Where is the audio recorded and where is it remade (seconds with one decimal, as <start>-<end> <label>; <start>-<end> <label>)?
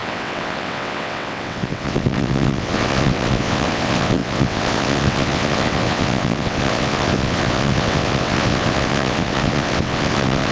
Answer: 0.0-10.5 remade